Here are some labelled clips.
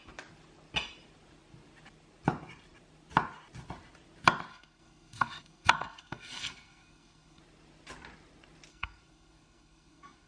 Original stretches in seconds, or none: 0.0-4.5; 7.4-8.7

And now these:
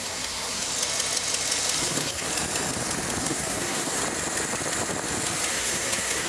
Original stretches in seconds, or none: 0.7-1.8; 2.3-3.2; 4.0-5.5